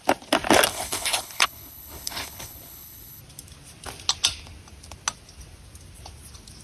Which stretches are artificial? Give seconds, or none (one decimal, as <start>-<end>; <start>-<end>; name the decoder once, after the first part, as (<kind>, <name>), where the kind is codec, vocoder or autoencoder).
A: 0.7-3.2 (codec, HILCodec)